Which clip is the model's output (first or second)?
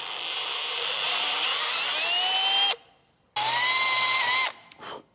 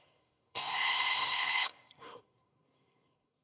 second